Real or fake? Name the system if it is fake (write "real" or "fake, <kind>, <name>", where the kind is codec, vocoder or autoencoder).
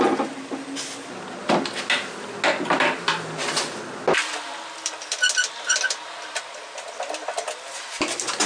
real